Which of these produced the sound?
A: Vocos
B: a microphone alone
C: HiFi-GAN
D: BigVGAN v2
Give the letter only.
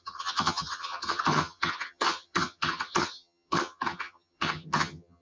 C